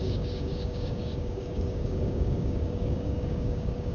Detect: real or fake fake